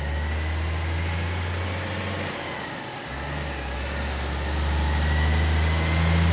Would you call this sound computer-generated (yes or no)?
no